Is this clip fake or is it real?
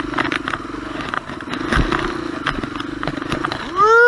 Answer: real